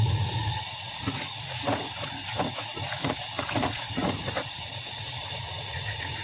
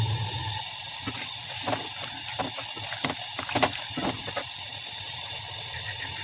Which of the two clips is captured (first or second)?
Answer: second